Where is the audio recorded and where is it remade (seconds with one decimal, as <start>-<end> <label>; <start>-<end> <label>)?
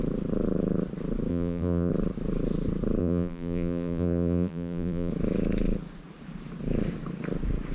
0.0-1.3 recorded; 1.3-1.9 remade; 1.9-3.0 recorded; 3.0-5.1 remade; 5.1-7.7 recorded